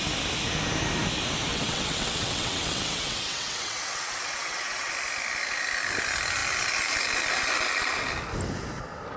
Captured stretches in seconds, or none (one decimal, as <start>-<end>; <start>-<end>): 0.0-1.5; 4.9-9.2